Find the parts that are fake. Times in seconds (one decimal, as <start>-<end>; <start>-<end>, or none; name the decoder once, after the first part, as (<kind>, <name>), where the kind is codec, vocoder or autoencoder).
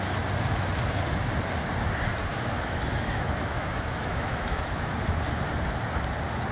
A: 2.3-4.9 (autoencoder, DAC-VAE)